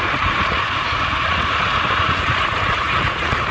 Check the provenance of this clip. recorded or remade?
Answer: remade